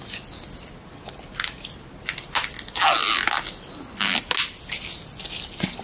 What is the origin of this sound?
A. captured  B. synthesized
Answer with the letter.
A